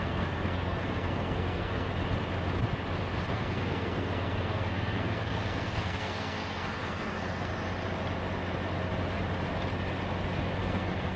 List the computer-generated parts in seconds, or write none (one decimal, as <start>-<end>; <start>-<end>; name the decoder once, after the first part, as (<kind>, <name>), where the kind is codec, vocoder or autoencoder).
0.0-1.9 (codec, SNAC); 3.3-7.5; 10.6-11.2